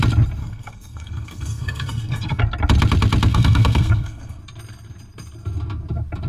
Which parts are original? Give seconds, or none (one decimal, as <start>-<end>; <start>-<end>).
0.0-0.4; 2.4-3.3; 4.4-6.3